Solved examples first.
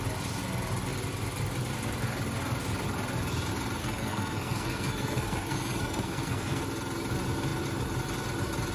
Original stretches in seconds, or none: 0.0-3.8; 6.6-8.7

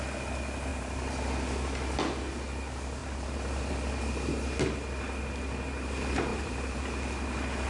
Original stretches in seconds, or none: 0.0-0.7; 1.2-3.0; 3.7-6.3; 6.8-7.7

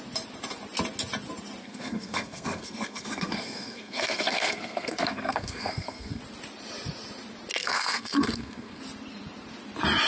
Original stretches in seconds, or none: 0.0-1.6; 6.2-7.6; 8.8-10.1

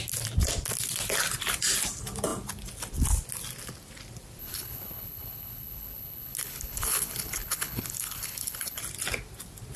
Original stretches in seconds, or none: 0.0-4.4; 8.8-9.8